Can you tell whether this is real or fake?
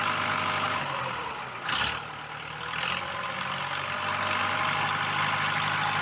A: real